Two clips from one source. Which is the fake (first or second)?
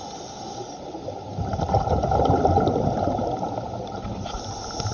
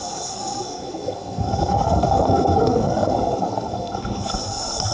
second